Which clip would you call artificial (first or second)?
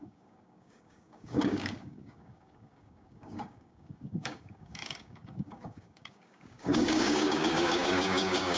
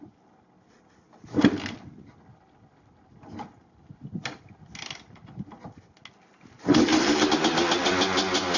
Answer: first